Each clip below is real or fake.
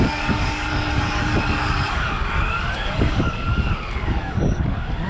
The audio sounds fake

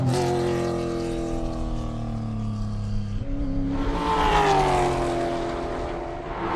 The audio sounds real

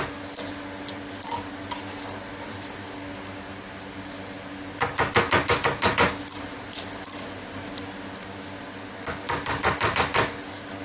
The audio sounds real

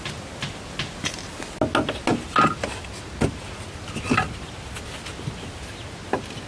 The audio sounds real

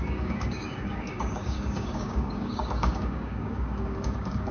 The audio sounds fake